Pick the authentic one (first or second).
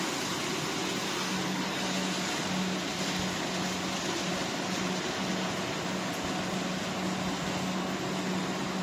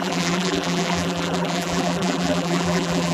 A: first